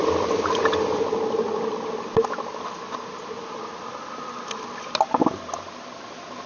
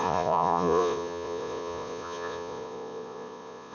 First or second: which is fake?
second